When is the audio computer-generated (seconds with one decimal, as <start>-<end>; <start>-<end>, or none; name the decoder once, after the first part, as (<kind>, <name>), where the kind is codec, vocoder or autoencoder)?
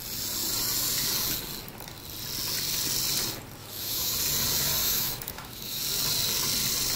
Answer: 3.6-4.1 (autoencoder, DAC-VAE); 4.8-5.8